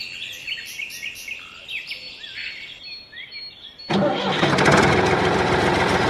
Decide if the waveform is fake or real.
real